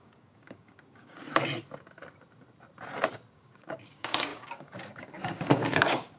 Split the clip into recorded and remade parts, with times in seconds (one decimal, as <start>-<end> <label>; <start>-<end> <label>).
0.0-1.3 remade; 1.3-3.3 recorded; 3.3-6.2 remade